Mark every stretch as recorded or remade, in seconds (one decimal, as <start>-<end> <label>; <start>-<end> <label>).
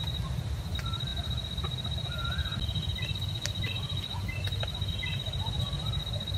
0.0-6.4 recorded